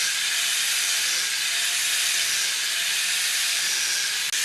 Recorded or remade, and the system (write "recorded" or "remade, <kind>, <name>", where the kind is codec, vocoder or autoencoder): recorded